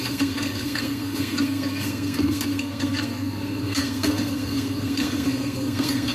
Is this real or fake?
fake